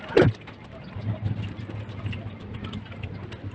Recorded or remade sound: recorded